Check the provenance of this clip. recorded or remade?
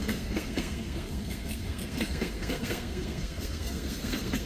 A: remade